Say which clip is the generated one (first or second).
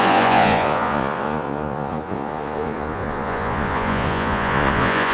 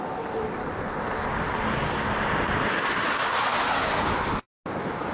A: first